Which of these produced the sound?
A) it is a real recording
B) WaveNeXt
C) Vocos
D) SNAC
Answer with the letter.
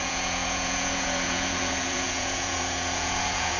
C